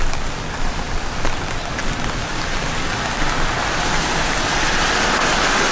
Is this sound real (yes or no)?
yes